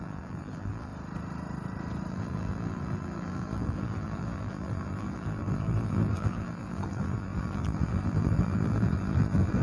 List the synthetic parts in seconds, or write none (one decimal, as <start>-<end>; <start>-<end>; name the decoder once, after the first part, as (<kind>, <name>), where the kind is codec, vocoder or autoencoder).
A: 0.0-0.9 (vocoder, BigVGAN v2); 2.1-9.6